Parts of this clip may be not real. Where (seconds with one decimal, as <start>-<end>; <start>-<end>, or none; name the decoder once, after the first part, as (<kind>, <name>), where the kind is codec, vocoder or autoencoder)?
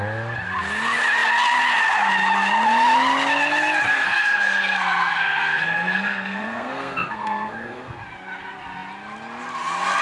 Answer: 3.9-8.0 (codec, SNAC)